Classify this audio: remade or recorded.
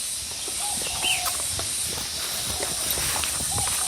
recorded